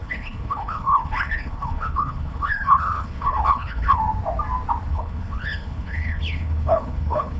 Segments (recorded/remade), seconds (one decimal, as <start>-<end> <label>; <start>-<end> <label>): 0.0-4.0 remade; 4.0-4.9 recorded; 4.9-7.4 remade